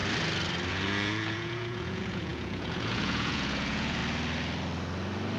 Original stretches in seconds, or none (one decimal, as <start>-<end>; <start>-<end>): 0.0-0.7; 4.0-5.4